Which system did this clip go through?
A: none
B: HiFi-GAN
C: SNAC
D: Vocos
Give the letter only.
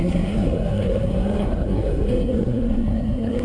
C